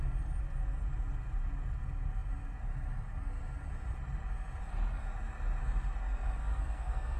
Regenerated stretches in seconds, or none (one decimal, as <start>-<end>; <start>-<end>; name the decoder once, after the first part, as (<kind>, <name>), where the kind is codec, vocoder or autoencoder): 6.4-7.2 (codec, SNAC)